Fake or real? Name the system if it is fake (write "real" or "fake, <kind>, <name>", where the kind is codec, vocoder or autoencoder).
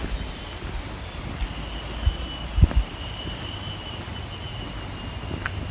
real